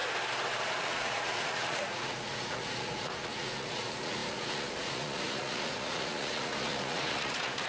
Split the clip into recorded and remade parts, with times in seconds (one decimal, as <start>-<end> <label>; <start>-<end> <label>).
0.0-0.8 recorded; 0.8-7.7 remade